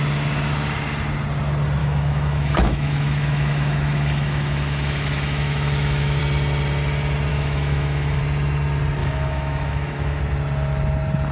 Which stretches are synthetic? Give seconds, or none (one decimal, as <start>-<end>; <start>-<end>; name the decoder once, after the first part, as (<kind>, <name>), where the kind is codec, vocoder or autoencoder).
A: 1.8-6.2 (autoencoder, DAC-VAE); 7.3-8.2; 9.0-10.2